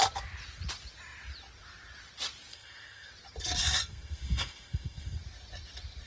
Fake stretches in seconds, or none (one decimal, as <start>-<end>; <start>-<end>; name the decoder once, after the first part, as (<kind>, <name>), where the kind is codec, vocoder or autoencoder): 2.5-3.1 (codec, SNAC); 3.6-5.2